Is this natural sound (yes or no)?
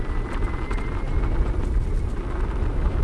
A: yes